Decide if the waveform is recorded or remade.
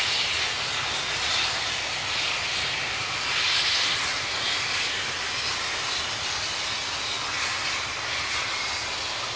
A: recorded